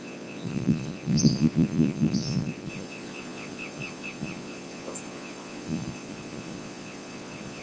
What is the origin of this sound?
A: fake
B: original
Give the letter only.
A